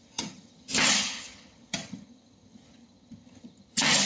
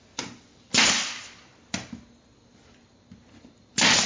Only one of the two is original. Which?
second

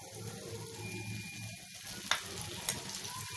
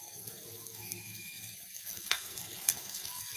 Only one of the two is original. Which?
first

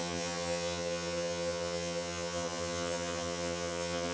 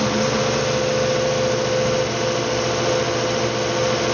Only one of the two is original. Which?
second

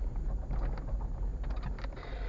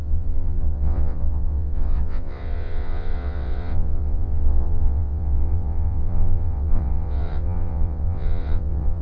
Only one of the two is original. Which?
first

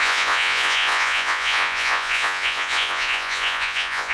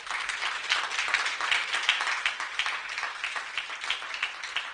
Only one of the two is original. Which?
second